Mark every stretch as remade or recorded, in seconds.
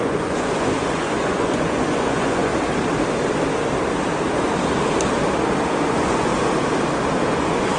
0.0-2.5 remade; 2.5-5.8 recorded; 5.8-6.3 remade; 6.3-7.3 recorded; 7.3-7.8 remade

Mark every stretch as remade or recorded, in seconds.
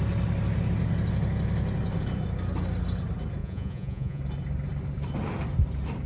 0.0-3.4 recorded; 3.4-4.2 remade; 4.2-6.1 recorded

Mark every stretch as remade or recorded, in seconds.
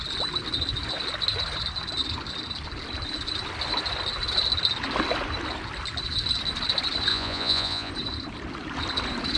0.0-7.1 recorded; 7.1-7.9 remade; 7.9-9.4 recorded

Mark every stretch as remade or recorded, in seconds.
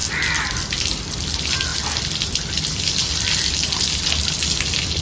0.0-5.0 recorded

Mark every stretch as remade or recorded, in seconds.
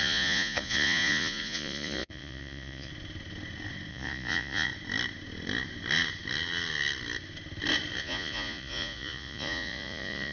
0.0-2.9 remade; 2.9-3.9 recorded; 3.9-4.7 remade; 4.7-8.0 recorded; 8.0-10.3 remade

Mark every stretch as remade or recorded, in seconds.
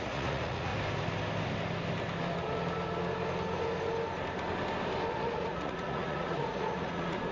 0.0-0.7 remade; 0.7-5.1 recorded; 5.1-7.3 remade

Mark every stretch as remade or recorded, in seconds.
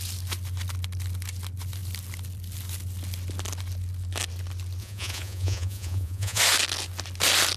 0.0-4.8 recorded; 4.8-6.4 remade; 6.4-7.6 recorded